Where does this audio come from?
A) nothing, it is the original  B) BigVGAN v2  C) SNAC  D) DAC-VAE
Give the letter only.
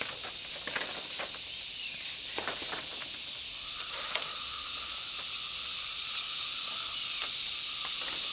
A